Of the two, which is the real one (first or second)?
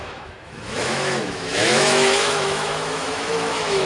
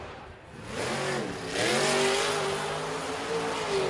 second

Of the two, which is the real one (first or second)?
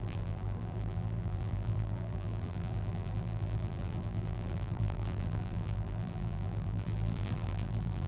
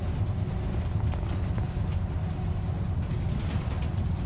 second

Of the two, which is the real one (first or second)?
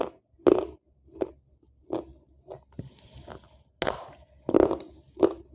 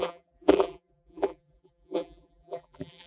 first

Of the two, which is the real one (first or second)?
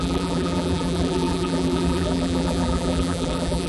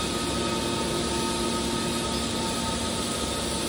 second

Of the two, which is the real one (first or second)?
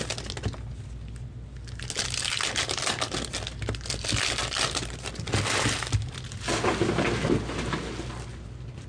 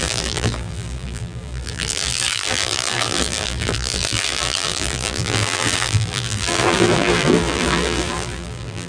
first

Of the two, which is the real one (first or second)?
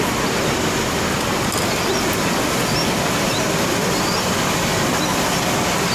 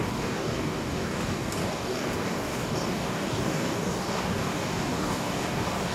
first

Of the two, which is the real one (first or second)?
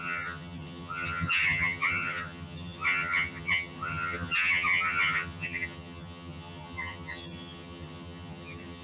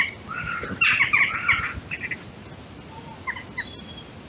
second